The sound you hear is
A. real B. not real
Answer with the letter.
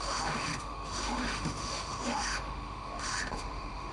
B